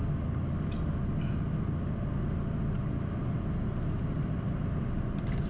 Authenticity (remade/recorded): recorded